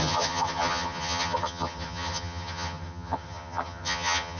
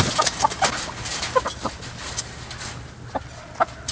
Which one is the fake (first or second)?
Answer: first